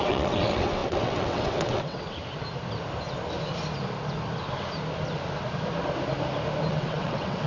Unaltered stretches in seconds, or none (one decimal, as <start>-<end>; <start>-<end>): 2.2-6.7